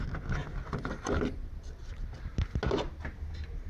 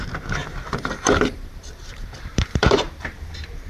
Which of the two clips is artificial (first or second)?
second